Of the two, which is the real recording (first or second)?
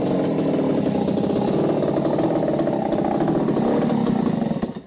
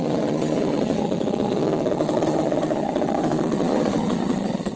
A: first